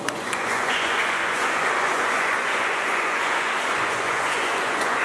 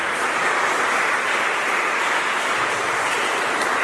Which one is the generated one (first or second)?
first